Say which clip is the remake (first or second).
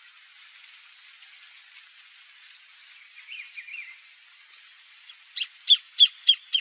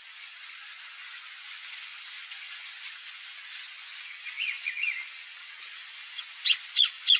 second